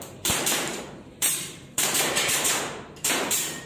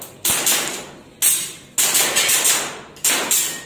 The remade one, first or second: first